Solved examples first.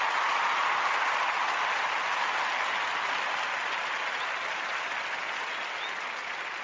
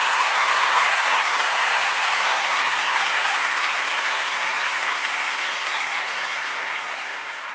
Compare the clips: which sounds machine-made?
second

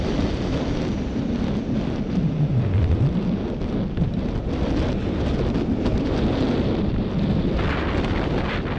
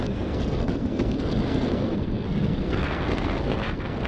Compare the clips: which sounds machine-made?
second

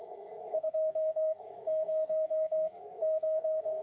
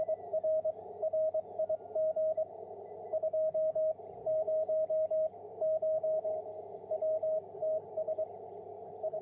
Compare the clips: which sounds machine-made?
first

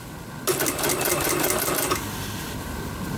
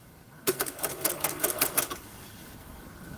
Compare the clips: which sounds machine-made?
second